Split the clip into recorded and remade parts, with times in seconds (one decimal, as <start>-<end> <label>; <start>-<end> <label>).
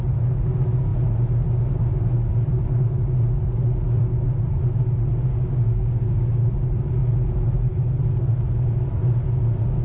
0.0-5.3 recorded; 5.3-6.5 remade; 6.5-9.8 recorded